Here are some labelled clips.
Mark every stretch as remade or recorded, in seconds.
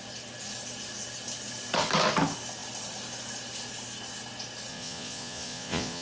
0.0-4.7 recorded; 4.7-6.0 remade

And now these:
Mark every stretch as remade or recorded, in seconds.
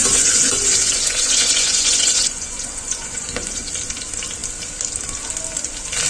0.0-3.7 remade; 3.7-6.1 recorded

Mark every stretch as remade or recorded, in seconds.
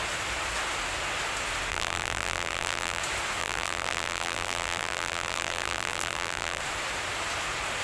0.0-1.7 recorded; 1.7-3.0 remade; 3.0-3.4 recorded; 3.4-6.6 remade; 6.6-7.8 recorded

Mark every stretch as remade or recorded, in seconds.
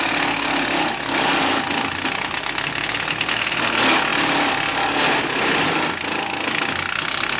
0.0-4.1 recorded; 4.1-4.7 remade; 4.7-7.4 recorded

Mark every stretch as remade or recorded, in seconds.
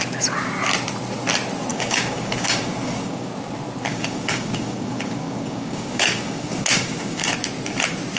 0.0-1.7 recorded; 1.7-3.3 remade; 3.3-3.9 recorded; 3.9-7.3 remade; 7.3-8.2 recorded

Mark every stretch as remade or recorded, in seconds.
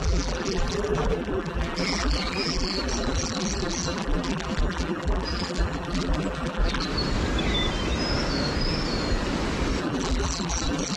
0.0-6.9 remade; 6.9-9.8 recorded; 9.8-11.0 remade